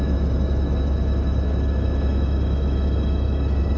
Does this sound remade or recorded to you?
remade